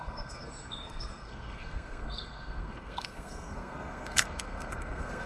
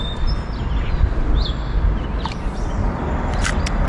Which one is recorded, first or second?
second